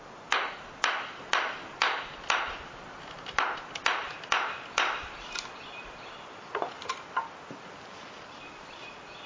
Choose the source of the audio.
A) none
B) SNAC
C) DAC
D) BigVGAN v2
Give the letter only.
A